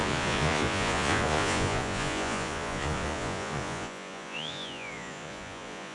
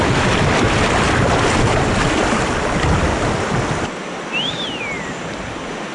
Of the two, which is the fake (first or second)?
first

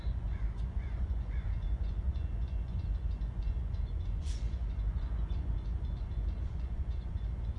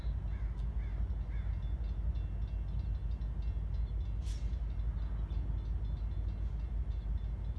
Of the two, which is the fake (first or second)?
first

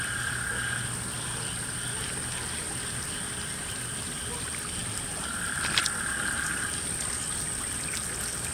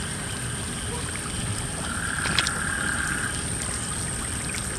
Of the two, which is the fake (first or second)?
second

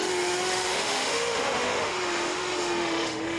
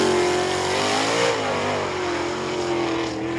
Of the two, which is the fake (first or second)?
first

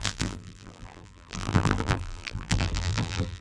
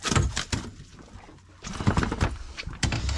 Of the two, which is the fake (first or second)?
first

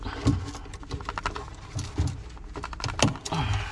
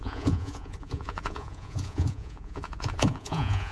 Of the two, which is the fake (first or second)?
second